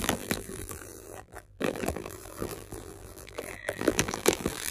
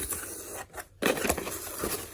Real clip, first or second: second